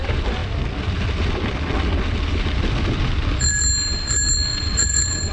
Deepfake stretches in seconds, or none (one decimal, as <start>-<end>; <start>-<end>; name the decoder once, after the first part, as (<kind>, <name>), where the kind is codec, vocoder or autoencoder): 4.5-5.3 (vocoder, WaveNeXt)